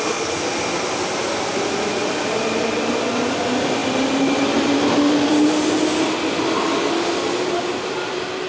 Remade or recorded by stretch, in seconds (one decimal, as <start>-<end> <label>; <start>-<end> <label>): 0.0-8.5 recorded